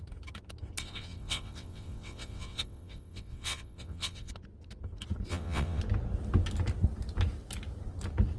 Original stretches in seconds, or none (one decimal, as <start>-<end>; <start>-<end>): 0.0-0.8; 4.3-5.3; 5.8-8.4